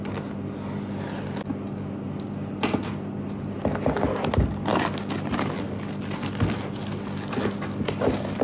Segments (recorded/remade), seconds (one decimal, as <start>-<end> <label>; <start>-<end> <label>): 0.0-8.4 recorded